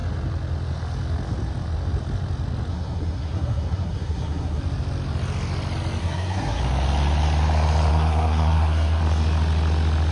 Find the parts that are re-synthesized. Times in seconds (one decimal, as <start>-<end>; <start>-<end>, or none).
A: 2.7-4.6; 6.0-6.6; 7.9-9.0